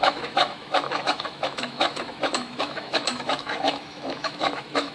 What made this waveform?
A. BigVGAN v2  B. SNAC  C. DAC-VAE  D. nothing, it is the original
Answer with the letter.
C